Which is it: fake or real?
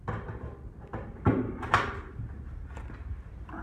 real